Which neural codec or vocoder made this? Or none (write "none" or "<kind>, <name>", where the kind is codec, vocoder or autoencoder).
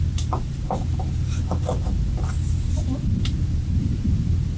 vocoder, BigVGAN v2